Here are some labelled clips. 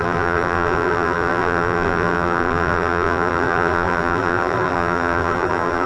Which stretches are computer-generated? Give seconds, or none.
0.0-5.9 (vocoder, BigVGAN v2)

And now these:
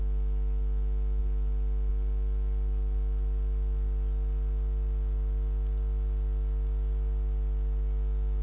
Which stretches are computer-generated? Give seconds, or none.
none

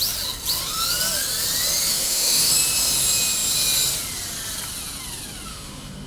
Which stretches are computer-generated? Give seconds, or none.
1.9-2.5 (autoencoder, DAC-VAE); 5.5-6.1

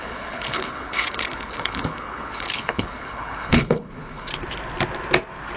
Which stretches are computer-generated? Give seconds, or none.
0.0-4.3 (codec, HILCodec)

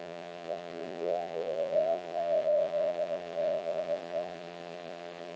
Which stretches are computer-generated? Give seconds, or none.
0.0-5.4 (vocoder, Vocos)